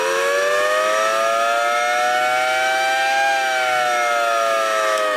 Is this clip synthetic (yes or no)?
yes